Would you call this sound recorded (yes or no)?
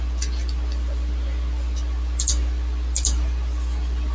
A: yes